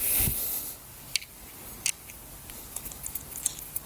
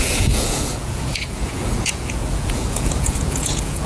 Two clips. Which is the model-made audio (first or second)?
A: second